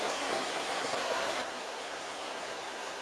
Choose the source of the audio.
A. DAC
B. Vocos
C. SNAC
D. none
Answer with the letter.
C